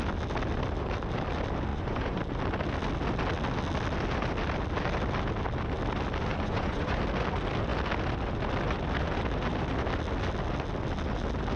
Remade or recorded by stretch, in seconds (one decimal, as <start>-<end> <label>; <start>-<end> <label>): 0.0-1.7 recorded; 1.7-2.2 remade; 2.2-6.3 recorded; 6.3-7.0 remade; 7.0-11.6 recorded